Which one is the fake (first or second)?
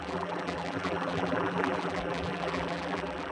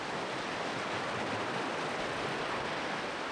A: first